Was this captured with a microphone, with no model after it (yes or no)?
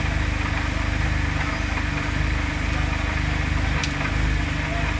yes